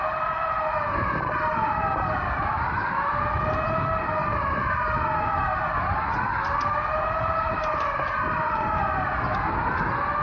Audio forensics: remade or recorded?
recorded